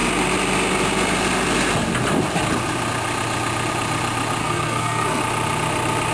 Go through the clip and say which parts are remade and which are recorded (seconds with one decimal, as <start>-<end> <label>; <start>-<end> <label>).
0.0-4.4 recorded; 4.4-5.2 remade; 5.2-6.1 recorded